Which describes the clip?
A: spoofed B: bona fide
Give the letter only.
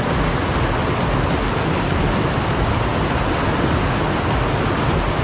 B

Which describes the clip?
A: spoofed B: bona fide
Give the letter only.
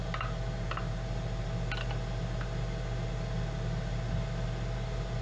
B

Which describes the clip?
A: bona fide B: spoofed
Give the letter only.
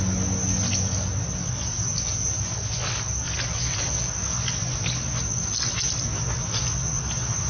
A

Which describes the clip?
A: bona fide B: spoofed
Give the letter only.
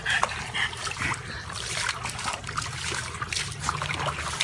A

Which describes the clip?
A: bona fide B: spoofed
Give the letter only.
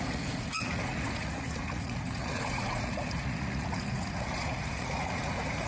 B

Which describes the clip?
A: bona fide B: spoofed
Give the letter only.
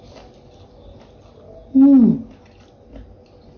A